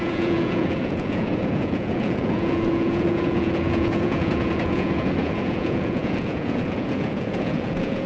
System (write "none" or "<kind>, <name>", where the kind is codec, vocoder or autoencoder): vocoder, Vocos